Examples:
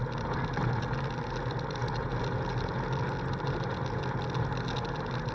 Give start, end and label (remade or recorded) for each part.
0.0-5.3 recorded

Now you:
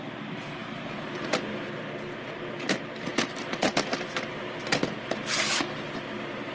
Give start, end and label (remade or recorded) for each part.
0.0-6.5 recorded

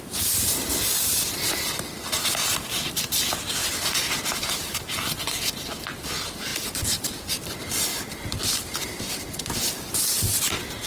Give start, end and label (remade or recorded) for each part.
0.0-3.6 recorded; 3.6-5.7 remade; 5.7-6.5 recorded; 6.5-7.2 remade; 7.2-10.9 recorded